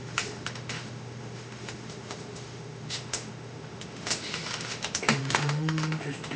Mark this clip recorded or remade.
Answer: remade